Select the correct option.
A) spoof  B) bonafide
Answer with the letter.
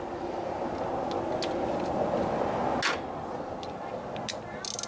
B